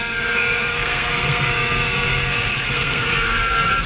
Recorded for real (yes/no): no